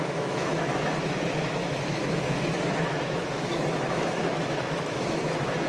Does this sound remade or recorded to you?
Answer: remade